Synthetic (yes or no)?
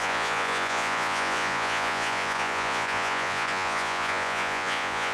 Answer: yes